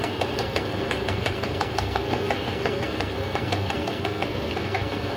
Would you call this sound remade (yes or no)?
yes